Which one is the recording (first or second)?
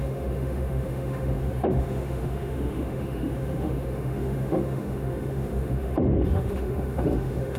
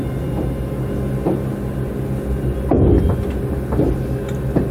second